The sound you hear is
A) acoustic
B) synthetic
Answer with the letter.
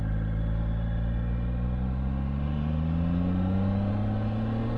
A